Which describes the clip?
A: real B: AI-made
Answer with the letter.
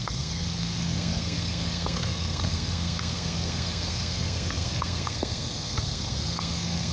B